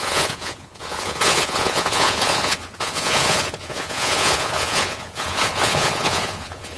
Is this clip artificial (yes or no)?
yes